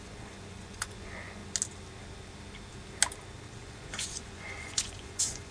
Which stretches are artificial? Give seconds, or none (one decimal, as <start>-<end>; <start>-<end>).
0.0-1.4; 3.6-5.5